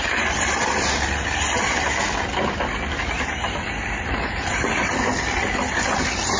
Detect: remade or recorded recorded